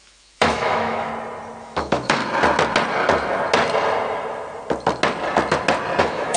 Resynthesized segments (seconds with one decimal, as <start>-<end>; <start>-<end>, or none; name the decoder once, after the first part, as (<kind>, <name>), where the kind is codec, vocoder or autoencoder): 0.0-1.1 (autoencoder, DAC-VAE); 1.6-2.2; 6.0-6.4